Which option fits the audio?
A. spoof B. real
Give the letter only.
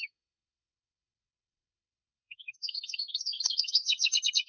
A